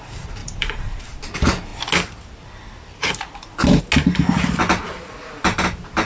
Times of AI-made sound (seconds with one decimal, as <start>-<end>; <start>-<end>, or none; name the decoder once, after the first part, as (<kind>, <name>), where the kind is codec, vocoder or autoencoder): 0.4-1.0 (vocoder, BigVGAN v2)